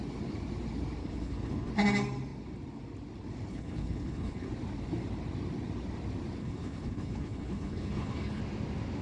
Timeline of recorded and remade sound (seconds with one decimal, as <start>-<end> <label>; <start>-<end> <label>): 0.0-1.0 recorded; 1.0-1.7 remade; 1.7-3.5 recorded; 3.5-4.5 remade; 4.5-6.4 recorded; 6.4-8.4 remade; 8.4-9.0 recorded